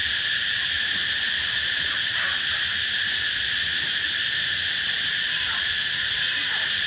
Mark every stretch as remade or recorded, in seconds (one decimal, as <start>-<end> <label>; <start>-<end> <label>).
0.0-6.9 recorded